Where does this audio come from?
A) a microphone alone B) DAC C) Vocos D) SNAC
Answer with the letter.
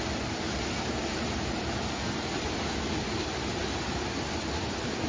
A